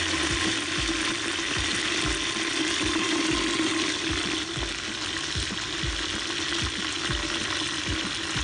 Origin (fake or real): real